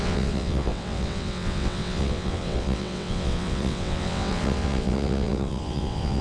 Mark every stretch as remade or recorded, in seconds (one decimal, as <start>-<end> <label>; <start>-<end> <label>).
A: 0.0-6.2 remade